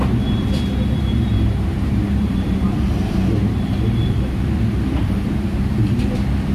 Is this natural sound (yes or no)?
no